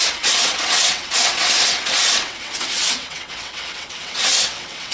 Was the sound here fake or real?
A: fake